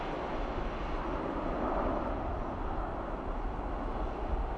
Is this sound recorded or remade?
recorded